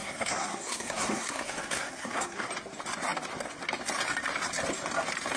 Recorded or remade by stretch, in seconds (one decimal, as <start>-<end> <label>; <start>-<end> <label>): 0.0-2.5 remade; 2.5-5.4 recorded